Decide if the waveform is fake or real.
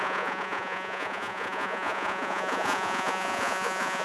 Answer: fake